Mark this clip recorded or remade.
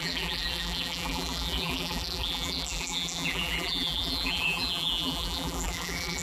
remade